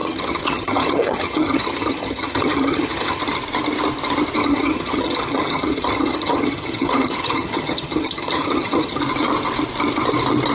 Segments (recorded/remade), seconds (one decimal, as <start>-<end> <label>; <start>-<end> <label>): 0.0-3.2 remade; 3.2-4.4 recorded; 4.4-9.0 remade; 9.0-10.5 recorded